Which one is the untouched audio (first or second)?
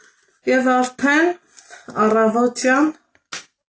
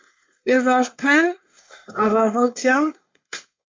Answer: first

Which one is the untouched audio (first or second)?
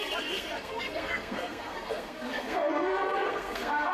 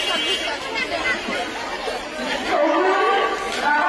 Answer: second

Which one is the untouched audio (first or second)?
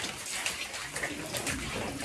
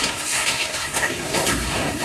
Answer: first